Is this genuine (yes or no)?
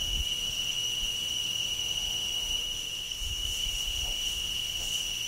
no